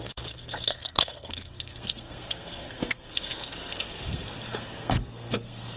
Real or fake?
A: fake